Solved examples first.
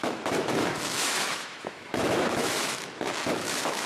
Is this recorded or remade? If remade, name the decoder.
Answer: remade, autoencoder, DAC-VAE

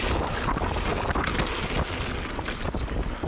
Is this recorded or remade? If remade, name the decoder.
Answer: recorded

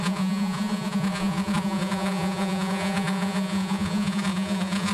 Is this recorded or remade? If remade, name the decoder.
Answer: remade, vocoder, Vocos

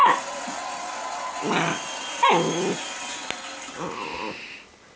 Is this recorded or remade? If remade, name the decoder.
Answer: recorded